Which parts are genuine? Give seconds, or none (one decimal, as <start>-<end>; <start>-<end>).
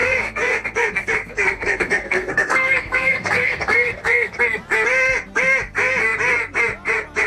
4.4-7.3